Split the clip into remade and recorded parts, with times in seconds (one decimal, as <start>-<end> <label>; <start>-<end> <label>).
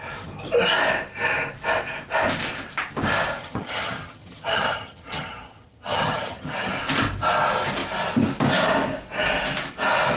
0.0-3.4 recorded; 3.4-6.7 remade; 6.7-10.2 recorded